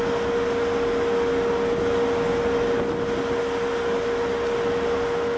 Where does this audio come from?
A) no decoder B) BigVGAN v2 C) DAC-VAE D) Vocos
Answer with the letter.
A